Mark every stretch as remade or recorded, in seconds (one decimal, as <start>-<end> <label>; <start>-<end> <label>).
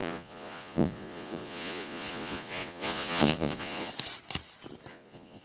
0.0-3.9 remade; 3.9-4.9 recorded; 4.9-5.4 remade